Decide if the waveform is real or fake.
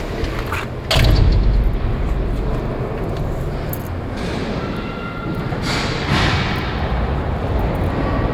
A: real